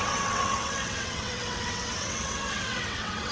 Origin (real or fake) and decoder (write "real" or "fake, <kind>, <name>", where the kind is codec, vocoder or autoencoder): fake, vocoder, WaveNeXt